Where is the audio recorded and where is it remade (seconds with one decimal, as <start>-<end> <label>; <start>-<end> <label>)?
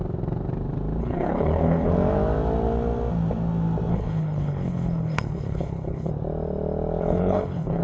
0.0-1.0 recorded; 1.0-1.9 remade; 1.9-3.9 recorded; 3.9-6.1 remade; 6.1-7.0 recorded; 7.0-7.8 remade